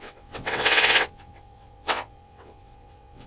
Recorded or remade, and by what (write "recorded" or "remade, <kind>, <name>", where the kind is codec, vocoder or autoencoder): remade, vocoder, WaveNeXt